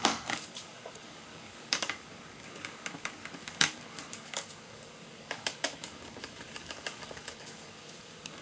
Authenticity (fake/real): fake